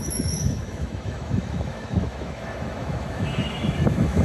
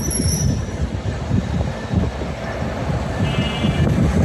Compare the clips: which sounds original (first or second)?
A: second